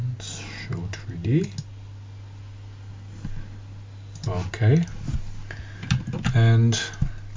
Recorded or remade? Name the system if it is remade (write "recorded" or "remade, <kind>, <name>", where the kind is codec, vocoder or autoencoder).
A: recorded